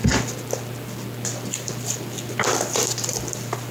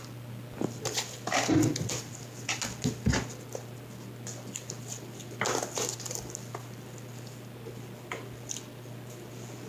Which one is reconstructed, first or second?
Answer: first